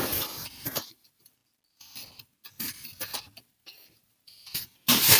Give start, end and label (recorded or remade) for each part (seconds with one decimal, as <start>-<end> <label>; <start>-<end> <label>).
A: 0.0-1.4 remade; 1.4-3.2 recorded; 3.2-5.2 remade